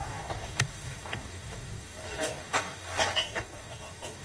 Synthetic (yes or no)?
yes